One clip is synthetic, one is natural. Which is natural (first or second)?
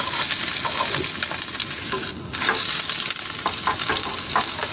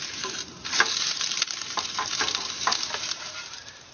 first